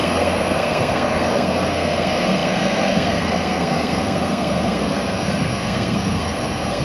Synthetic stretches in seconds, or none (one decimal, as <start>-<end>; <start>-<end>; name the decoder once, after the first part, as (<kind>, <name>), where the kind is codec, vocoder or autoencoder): 0.0-6.8 (codec, SNAC)